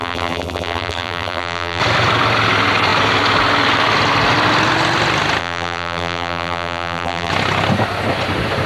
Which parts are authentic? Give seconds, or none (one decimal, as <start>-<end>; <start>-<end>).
1.8-5.4; 7.3-8.7